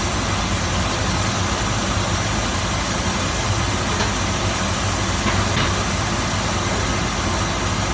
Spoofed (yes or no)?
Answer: no